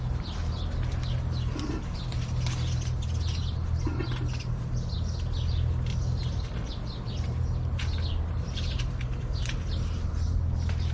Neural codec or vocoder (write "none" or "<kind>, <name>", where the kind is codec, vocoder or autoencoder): none